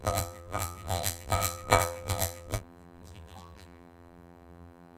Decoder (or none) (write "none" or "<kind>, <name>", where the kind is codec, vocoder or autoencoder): vocoder, BigVGAN v2